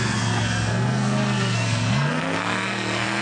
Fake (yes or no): yes